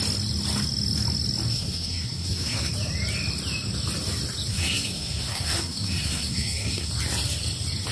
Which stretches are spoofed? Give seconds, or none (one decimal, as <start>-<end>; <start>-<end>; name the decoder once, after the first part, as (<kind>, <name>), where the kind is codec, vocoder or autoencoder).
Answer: 1.5-2.7 (codec, SNAC); 4.5-6.9